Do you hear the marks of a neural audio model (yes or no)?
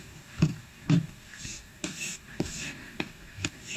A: yes